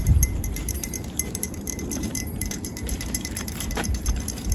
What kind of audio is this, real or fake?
fake